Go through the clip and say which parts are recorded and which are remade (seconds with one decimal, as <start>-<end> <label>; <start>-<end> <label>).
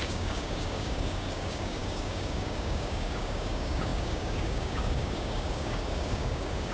0.0-6.7 remade